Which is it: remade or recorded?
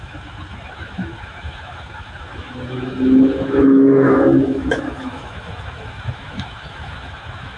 remade